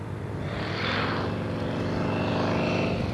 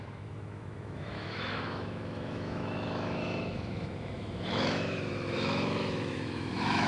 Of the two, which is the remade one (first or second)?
second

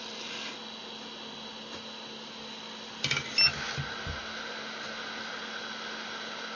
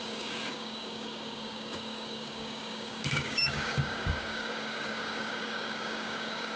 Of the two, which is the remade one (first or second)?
second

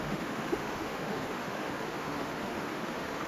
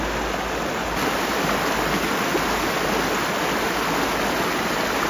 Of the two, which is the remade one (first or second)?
first